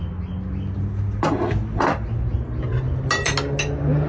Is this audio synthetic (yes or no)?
no